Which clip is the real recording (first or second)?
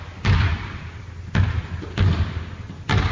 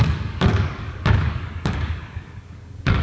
first